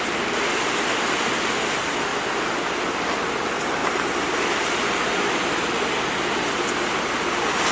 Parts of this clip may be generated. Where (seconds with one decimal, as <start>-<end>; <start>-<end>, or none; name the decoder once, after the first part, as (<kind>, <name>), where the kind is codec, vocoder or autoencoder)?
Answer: none